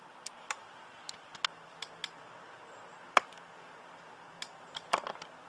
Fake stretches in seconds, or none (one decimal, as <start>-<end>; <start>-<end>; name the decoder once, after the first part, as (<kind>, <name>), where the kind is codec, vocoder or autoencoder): 2.0-5.5 (vocoder, BigVGAN v2)